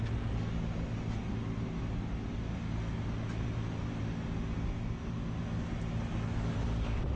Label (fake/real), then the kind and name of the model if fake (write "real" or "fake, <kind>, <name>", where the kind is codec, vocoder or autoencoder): real